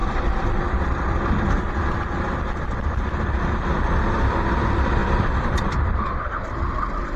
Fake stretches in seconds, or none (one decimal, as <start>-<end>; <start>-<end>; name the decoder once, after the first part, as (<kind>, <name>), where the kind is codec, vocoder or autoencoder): 0.0-0.6 (vocoder, BigVGAN v2); 5.0-6.0